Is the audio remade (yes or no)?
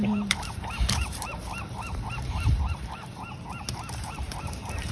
yes